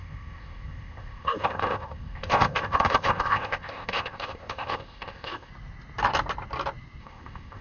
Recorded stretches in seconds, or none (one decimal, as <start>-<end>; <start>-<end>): 5.5-7.0

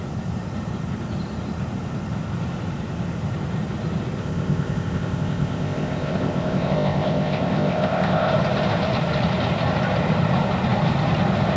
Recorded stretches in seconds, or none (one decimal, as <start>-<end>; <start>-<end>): 0.0-4.2; 8.3-11.6

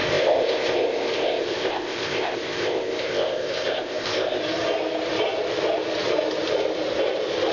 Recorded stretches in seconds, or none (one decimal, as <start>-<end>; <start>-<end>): 4.4-7.5

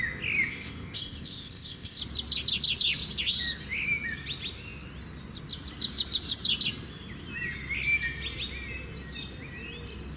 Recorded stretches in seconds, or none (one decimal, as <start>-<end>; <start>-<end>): 0.0-0.5; 2.0-10.2

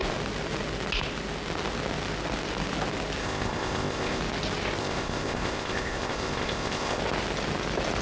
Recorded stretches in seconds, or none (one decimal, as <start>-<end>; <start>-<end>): 0.0-3.2; 4.2-4.8; 7.0-8.0

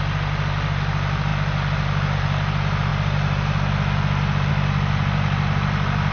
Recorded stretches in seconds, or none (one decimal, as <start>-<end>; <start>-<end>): 0.0-6.1

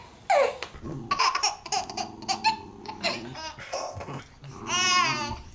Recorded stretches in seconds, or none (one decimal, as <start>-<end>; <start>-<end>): 0.0-3.6; 4.2-5.5